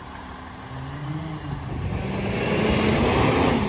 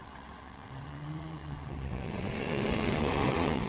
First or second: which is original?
first